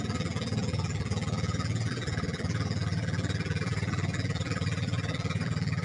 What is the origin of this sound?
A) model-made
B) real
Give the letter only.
A